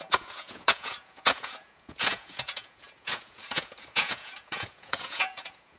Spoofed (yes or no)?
yes